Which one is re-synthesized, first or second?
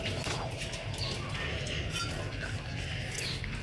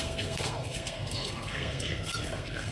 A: second